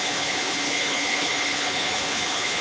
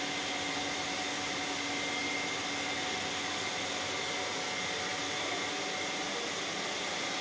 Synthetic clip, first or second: first